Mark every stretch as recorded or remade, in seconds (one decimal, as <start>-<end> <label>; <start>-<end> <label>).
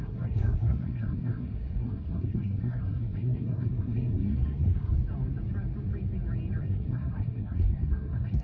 0.0-4.9 remade; 4.9-6.6 recorded; 6.6-8.4 remade